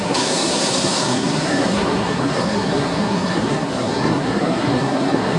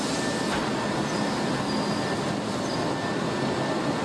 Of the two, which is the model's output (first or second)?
first